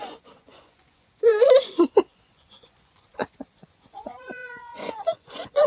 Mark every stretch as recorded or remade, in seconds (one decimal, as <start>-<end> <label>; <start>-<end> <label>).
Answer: 0.0-5.7 remade